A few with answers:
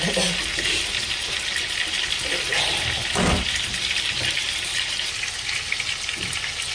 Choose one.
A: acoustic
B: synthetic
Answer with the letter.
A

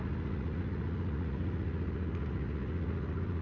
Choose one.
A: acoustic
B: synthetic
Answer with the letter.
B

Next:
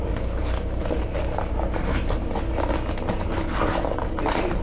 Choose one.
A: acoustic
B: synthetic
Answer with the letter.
A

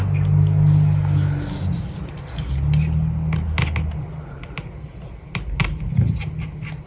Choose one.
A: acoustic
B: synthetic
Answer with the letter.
A